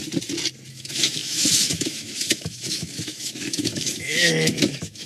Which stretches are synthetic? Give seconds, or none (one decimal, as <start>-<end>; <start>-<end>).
0.7-5.1